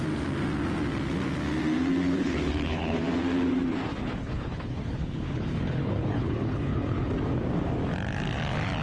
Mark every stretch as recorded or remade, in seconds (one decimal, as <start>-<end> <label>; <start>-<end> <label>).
0.0-2.0 recorded; 2.0-3.0 remade; 3.0-3.9 recorded; 3.9-7.1 remade; 7.1-8.8 recorded